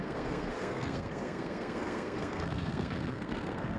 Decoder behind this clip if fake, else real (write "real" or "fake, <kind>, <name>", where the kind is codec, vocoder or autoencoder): fake, codec, SNAC